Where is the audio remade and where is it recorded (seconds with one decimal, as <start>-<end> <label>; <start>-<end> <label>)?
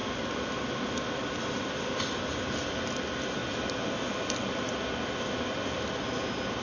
0.0-6.6 recorded